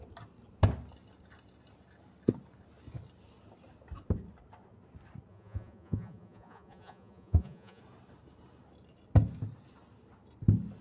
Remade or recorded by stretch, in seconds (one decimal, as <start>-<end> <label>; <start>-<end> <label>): 0.0-5.3 recorded; 5.3-7.8 remade; 7.8-10.8 recorded